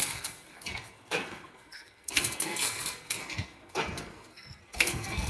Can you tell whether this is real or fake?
fake